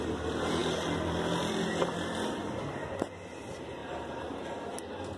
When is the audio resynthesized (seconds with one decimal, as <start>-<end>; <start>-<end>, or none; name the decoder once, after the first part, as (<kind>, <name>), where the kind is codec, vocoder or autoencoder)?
none